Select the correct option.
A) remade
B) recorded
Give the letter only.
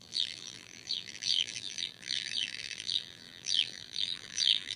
A